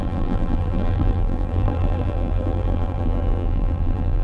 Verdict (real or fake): fake